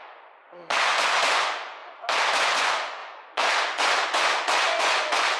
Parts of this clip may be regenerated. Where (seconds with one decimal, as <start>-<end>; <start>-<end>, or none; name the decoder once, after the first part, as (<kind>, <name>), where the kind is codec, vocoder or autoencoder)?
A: 0.0-1.8 (vocoder, Vocos); 2.3-5.4